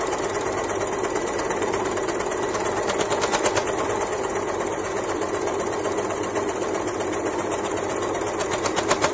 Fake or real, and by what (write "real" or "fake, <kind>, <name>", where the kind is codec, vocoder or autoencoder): fake, vocoder, BigVGAN v2